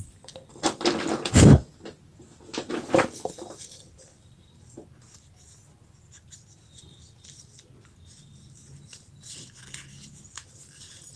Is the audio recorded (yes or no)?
yes